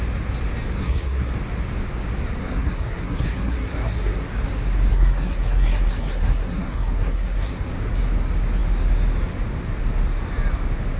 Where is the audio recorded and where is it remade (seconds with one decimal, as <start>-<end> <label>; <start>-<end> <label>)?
0.0-0.8 recorded; 0.8-1.3 remade; 1.3-2.4 recorded; 2.4-4.2 remade; 4.2-4.9 recorded; 4.9-7.7 remade; 7.7-11.0 recorded